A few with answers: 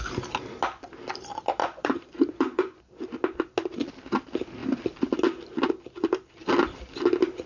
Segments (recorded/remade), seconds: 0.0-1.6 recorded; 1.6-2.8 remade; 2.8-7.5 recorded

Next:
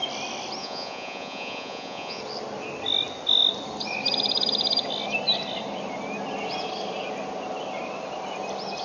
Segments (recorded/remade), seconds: 0.0-0.6 recorded; 0.6-2.2 remade; 2.2-8.8 recorded

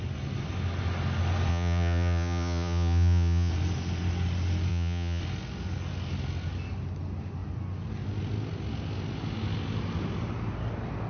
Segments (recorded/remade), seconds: 0.0-1.5 recorded; 1.5-3.5 remade; 3.5-4.7 recorded; 4.7-5.2 remade; 5.2-11.1 recorded

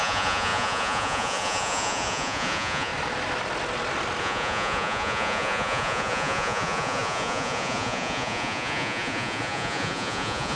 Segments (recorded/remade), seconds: 0.0-2.9 remade; 2.9-4.2 recorded; 4.2-10.6 remade